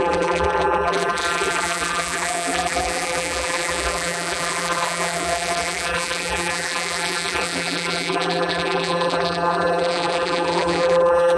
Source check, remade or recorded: remade